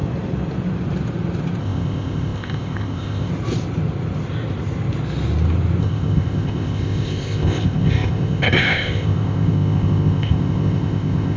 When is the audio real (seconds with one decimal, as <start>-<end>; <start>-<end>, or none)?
0.0-1.6; 3.3-5.8